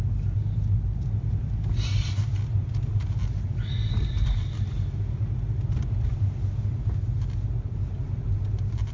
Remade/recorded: recorded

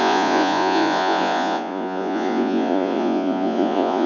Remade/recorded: remade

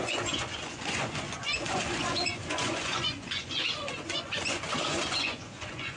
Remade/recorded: remade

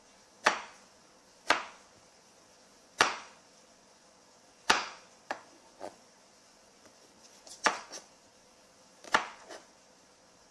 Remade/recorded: remade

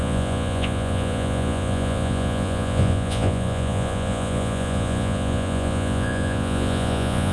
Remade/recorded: remade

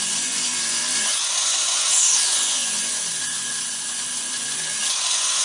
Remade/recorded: remade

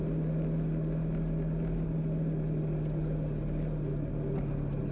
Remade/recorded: recorded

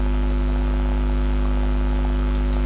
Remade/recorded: recorded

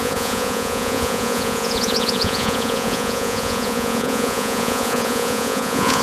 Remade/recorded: remade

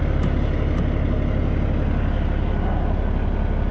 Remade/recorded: recorded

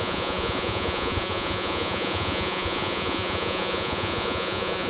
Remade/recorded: remade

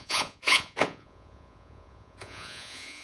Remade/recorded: remade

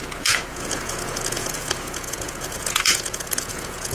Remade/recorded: remade